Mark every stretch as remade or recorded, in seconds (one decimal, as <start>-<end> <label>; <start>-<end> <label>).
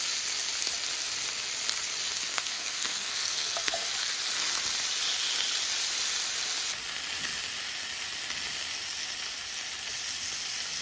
0.0-2.3 recorded; 2.3-3.9 remade; 3.9-10.8 recorded